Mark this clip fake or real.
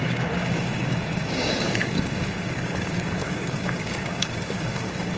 fake